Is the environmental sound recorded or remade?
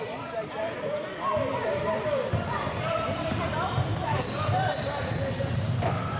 remade